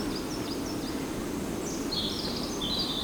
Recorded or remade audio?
recorded